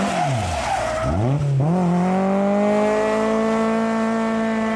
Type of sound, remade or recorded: recorded